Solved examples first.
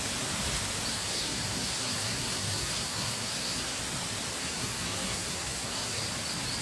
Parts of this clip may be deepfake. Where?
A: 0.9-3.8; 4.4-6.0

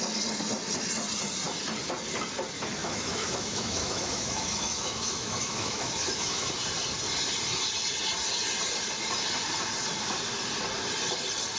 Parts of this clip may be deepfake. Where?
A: 2.8-6.5

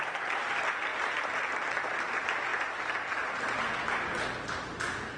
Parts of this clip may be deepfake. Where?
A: none

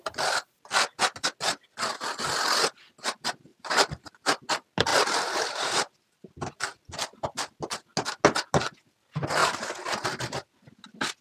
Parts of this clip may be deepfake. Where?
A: 3.5-4.1; 4.9-6.1; 9.4-10.5

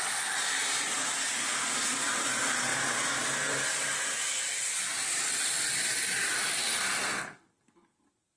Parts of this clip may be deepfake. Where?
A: none

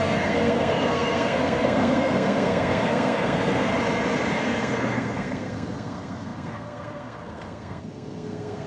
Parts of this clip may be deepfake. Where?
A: 0.0-3.7; 4.3-8.7

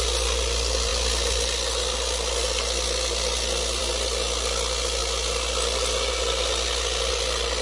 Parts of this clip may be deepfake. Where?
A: none

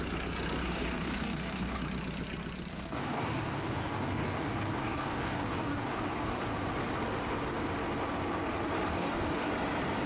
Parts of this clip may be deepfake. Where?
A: 0.6-1.8; 2.7-6.5; 8.9-9.5